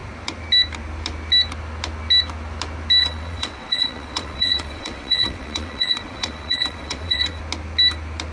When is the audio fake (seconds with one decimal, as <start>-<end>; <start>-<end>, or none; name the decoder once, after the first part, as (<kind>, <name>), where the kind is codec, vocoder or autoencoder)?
3.0-7.4 (vocoder, WaveNeXt)